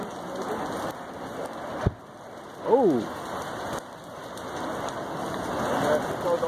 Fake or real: real